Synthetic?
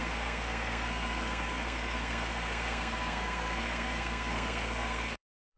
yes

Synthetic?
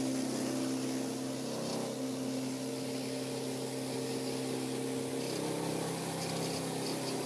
no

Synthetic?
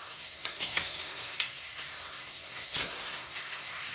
yes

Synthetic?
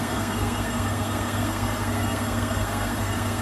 yes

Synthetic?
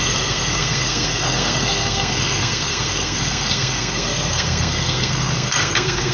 yes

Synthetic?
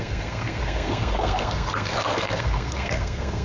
yes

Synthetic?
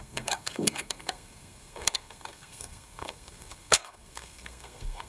yes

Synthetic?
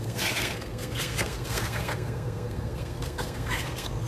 yes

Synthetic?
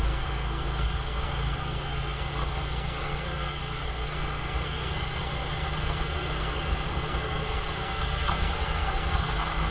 yes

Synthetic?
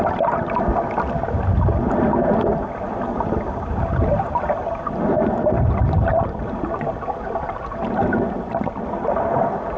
no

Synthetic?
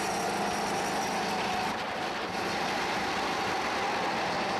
no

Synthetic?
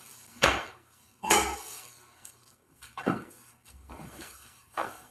yes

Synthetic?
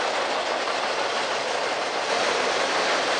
no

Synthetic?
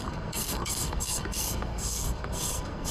yes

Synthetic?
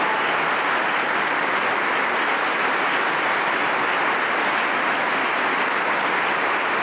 no